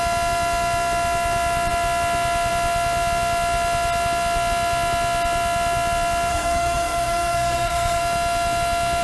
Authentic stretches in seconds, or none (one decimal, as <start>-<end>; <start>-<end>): 0.0-6.3; 8.0-9.0